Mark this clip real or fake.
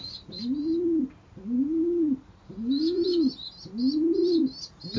real